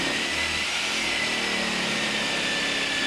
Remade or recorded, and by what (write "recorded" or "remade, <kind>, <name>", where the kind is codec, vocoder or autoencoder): recorded